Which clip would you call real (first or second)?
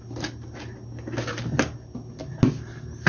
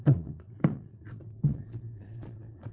first